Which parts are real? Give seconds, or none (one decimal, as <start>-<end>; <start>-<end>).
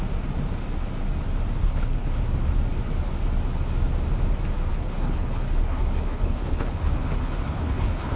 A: 0.0-1.6; 2.2-4.7